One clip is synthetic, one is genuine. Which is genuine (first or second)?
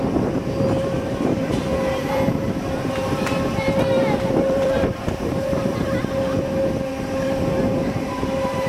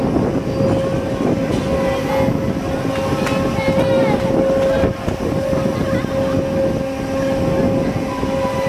second